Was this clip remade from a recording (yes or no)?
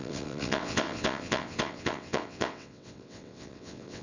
yes